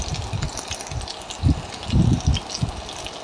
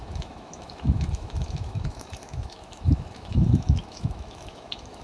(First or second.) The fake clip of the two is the second